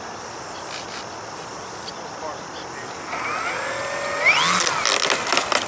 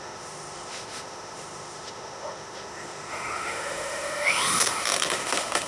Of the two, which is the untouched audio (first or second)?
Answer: first